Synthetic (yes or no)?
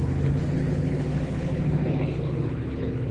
yes